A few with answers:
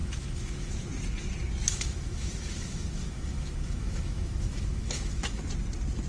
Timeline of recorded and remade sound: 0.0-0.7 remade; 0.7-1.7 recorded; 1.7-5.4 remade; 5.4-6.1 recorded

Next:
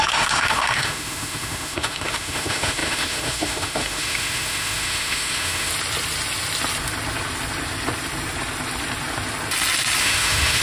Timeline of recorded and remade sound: 0.0-5.7 remade; 5.7-10.0 recorded; 10.0-10.6 remade

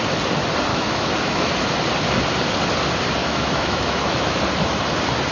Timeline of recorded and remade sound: 0.0-0.7 recorded; 0.7-1.5 remade; 1.5-3.2 recorded; 3.2-4.4 remade; 4.4-5.3 recorded

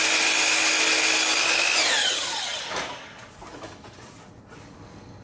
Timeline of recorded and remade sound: 0.0-2.0 recorded; 2.0-2.6 remade; 2.6-5.2 recorded

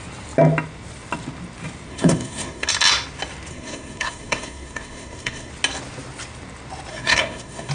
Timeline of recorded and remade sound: 0.0-1.9 recorded; 1.9-2.7 remade; 2.7-3.5 recorded; 3.5-5.5 remade; 5.5-6.9 recorded; 6.9-7.7 remade

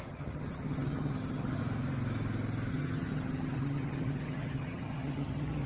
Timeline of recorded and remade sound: 0.0-1.6 remade; 1.6-2.7 recorded; 2.7-5.7 remade

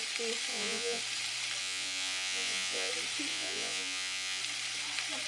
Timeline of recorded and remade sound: 0.0-0.5 recorded; 0.5-1.0 remade; 1.0-1.6 recorded; 1.6-2.9 remade; 2.9-3.3 recorded; 3.3-4.4 remade; 4.4-5.3 recorded

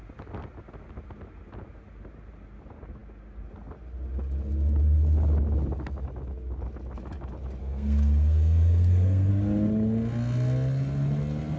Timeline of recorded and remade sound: 0.0-7.6 recorded; 7.6-9.3 remade; 9.3-11.6 recorded